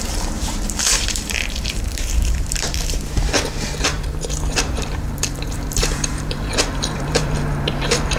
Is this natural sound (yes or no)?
no